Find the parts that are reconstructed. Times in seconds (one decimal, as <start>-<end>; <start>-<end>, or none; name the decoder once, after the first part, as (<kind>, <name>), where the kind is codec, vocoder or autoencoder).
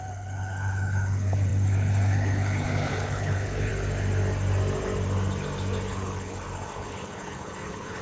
0.0-3.7 (codec, HILCodec); 5.9-8.0